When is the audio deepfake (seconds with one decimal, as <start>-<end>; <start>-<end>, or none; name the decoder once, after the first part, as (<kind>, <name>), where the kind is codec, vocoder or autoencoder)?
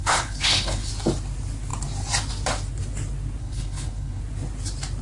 0.0-0.9 (codec, HILCodec); 3.4-4.2